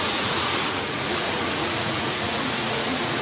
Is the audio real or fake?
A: fake